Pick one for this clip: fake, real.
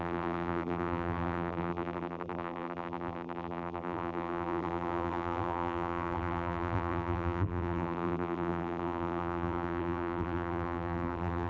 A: fake